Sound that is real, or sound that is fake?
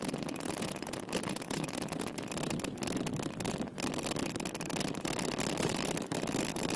real